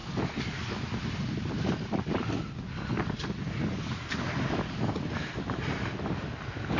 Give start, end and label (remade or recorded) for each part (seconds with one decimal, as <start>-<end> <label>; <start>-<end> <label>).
0.0-6.8 recorded